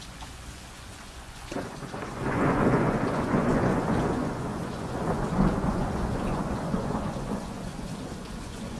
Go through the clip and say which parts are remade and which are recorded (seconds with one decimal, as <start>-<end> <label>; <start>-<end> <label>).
0.0-8.8 remade